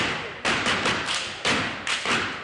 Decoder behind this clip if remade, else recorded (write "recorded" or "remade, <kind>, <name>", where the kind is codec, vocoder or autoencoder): recorded